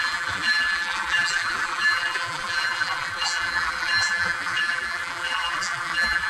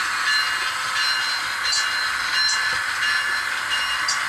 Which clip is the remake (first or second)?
first